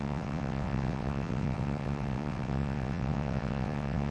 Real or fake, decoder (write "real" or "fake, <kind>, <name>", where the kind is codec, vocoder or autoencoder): fake, vocoder, WaveNeXt